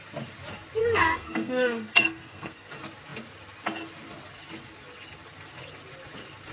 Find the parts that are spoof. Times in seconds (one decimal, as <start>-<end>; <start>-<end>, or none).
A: 0.8-2.7

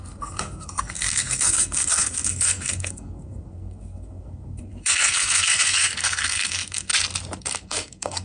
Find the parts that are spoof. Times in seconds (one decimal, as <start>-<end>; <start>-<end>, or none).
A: 0.0-6.9; 7.4-8.2

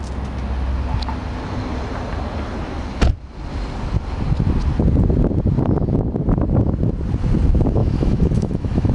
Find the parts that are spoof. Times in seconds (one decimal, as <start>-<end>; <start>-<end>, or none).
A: 7.8-8.9

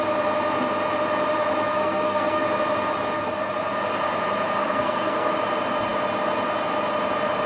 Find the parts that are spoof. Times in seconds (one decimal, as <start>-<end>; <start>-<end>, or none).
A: 1.7-2.4; 4.6-5.3

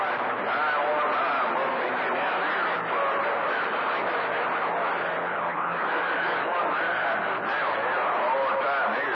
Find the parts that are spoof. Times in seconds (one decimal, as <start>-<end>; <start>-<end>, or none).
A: 5.5-6.6

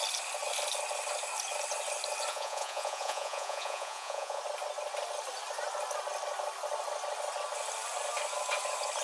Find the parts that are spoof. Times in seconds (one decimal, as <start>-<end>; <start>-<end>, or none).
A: 2.3-4.4

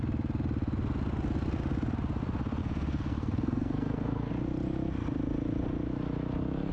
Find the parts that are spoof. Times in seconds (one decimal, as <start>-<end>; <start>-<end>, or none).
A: 2.6-4.3

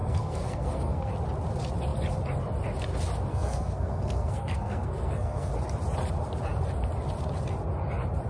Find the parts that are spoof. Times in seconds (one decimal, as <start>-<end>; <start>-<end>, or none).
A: 0.0-1.1; 3.3-5.5